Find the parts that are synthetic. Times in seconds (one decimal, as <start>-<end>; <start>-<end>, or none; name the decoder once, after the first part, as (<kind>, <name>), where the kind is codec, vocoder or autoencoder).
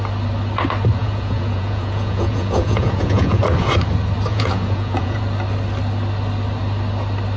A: 1.0-3.4 (vocoder, Vocos); 4.3-5.2